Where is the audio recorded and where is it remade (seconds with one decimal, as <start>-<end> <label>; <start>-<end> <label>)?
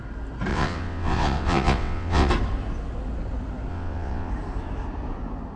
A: 0.0-0.5 recorded; 0.5-2.3 remade; 2.3-3.7 recorded; 3.7-4.3 remade; 4.3-5.6 recorded